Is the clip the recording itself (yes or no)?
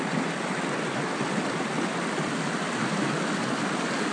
yes